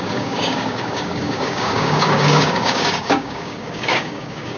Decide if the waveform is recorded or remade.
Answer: remade